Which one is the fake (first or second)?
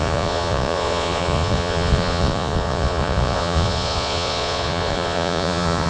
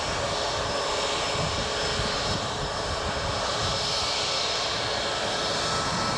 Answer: first